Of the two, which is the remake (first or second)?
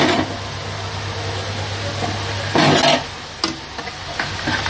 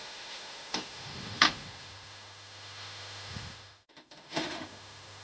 second